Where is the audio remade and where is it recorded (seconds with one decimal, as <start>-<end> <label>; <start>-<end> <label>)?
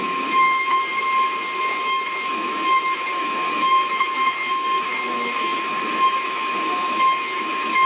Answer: 0.0-0.8 remade; 0.8-1.6 recorded; 1.6-7.9 remade